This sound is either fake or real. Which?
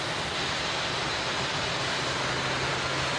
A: real